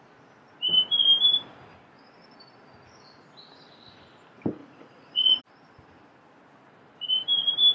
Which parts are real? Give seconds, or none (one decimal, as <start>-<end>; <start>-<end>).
0.0-4.6; 5.4-7.7